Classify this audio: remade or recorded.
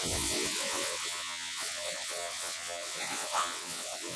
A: remade